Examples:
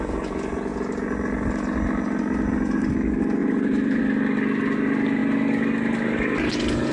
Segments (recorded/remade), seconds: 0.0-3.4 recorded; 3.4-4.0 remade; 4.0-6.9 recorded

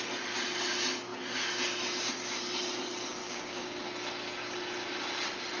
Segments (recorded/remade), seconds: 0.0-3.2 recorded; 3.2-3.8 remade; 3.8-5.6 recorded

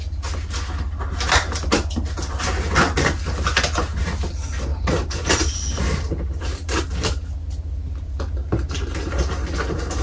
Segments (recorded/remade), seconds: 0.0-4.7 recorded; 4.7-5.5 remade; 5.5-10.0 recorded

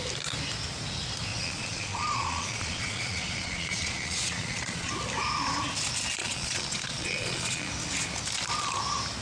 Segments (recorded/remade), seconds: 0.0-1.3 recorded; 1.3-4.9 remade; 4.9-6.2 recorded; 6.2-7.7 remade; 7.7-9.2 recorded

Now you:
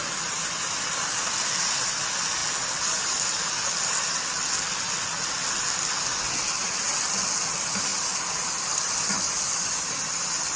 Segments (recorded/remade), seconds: 0.0-10.6 recorded